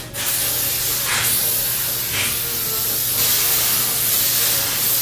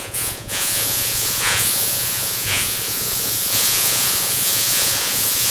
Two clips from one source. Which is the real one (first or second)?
first